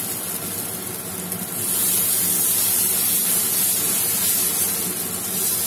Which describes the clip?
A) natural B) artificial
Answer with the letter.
A